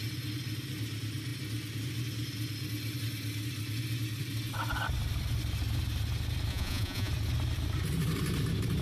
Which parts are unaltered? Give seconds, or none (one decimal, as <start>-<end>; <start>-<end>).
0.0-6.5; 7.1-8.8